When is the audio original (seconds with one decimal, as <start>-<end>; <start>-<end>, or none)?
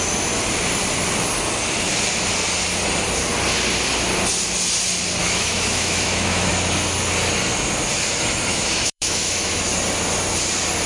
0.0-5.2; 6.5-8.5; 9.6-10.9